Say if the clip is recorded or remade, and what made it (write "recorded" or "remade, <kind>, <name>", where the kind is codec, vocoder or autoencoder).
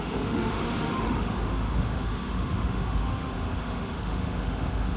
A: remade, autoencoder, DAC-VAE